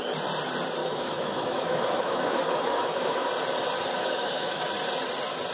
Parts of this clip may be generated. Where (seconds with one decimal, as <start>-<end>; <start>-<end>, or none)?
0.8-3.3; 4.0-4.6